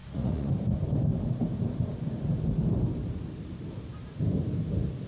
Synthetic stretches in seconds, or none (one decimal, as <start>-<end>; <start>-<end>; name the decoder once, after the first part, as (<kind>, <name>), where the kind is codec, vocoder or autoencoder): 0.0-0.5 (vocoder, Vocos)